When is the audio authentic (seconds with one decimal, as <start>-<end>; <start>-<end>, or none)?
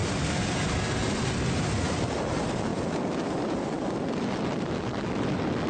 0.0-5.7